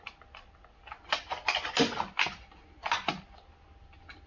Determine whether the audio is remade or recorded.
recorded